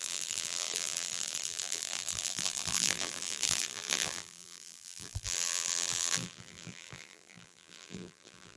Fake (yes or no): yes